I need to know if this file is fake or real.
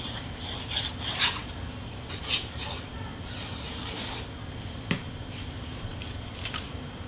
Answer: real